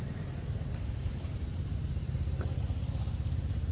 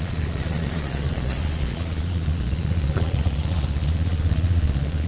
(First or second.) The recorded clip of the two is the first